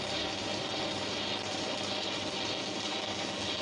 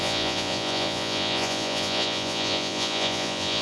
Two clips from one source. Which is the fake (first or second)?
second